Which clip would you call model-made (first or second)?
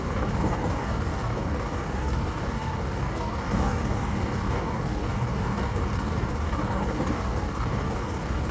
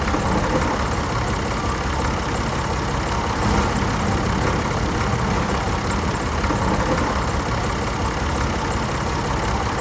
first